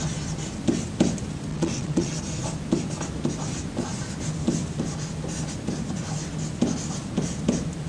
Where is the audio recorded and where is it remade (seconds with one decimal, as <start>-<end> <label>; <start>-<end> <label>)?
0.0-1.5 recorded; 1.5-2.2 remade; 2.2-7.9 recorded